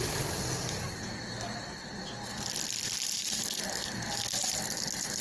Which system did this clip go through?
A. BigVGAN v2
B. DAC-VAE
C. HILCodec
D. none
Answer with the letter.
D